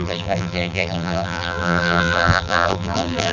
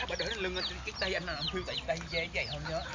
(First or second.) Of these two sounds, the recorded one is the second